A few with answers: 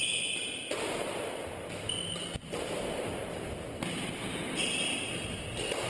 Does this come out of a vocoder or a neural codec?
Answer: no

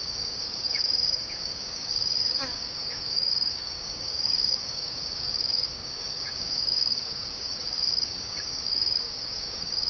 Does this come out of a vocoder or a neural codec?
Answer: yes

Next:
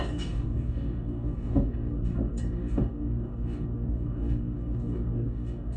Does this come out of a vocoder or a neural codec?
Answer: yes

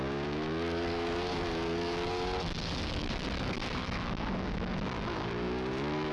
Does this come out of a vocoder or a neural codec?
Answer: yes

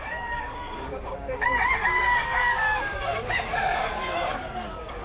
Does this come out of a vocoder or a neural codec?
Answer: yes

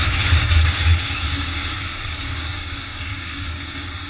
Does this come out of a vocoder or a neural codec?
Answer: yes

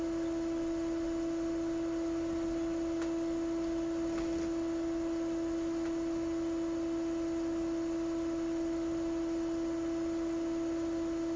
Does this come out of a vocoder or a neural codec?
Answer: no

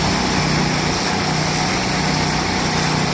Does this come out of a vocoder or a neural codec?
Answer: no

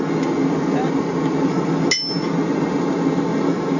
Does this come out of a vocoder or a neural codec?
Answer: no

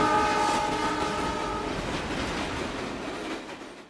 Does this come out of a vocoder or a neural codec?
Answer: no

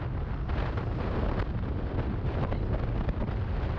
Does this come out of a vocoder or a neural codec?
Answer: no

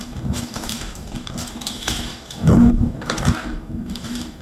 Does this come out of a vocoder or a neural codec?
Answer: yes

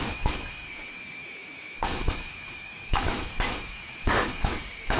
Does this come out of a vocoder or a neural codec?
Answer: yes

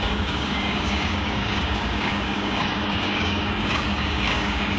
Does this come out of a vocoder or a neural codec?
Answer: yes